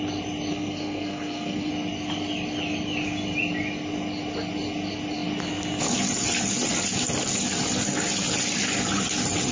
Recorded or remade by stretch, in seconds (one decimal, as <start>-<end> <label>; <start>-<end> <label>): 0.0-0.5 recorded; 0.5-1.7 remade; 1.7-9.5 recorded